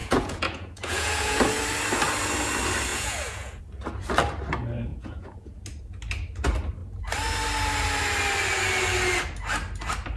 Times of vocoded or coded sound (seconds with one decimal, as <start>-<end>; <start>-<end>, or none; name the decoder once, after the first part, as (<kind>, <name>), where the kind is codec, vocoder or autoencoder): 0.0-1.4 (vocoder, Vocos); 2.9-3.6; 4.9-5.6